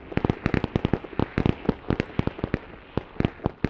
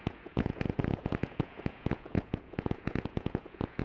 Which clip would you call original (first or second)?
first